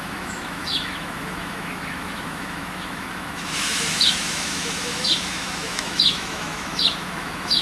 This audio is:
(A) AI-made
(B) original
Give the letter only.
A